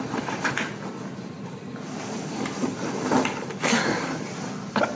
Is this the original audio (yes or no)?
yes